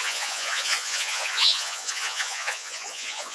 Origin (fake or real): fake